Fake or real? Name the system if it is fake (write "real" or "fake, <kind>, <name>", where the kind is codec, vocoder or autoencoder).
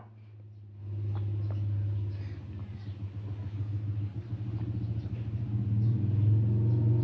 real